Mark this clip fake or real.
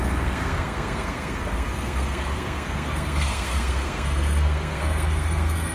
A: fake